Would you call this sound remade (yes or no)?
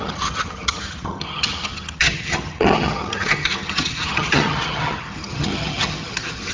yes